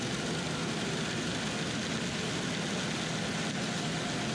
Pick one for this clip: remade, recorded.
recorded